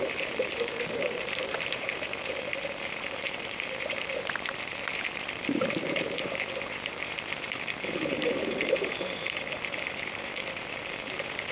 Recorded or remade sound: remade